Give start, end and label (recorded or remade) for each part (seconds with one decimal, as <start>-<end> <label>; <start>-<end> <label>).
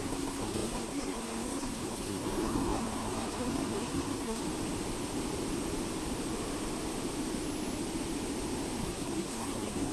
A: 0.0-4.4 remade; 4.4-8.8 recorded; 8.8-9.9 remade